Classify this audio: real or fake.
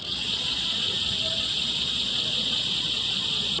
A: fake